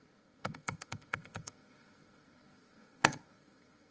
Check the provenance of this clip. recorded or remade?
remade